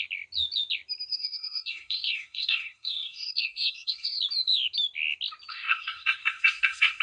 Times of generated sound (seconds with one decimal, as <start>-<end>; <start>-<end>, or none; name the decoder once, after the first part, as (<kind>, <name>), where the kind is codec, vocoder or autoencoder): 1.1-4.2 (codec, SNAC); 5.5-7.0